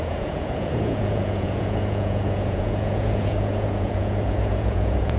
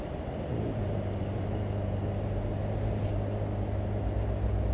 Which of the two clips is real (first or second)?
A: second